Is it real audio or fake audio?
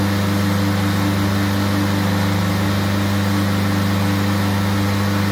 real